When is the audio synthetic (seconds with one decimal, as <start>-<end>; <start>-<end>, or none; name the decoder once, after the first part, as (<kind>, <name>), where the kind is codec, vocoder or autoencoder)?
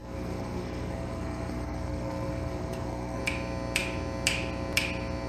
0.0-3.2 (codec, SNAC)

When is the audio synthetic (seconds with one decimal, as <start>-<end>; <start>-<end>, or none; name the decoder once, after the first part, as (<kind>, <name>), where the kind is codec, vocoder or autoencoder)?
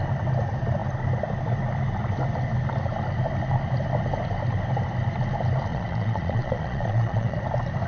5.7-7.4 (vocoder, Vocos)